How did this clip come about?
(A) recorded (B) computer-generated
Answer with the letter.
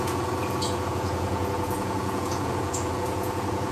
B